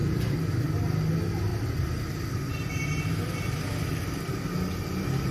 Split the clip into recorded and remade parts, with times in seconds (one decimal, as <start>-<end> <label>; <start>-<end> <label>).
0.0-1.5 recorded; 1.5-3.0 remade; 3.0-5.3 recorded